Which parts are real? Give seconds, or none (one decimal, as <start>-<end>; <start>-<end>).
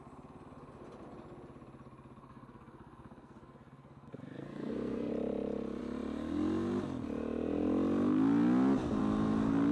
0.0-2.2; 5.1-9.7